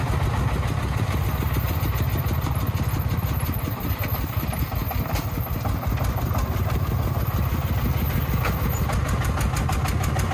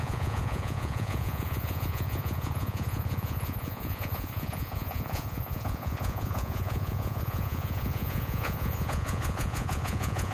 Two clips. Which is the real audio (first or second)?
first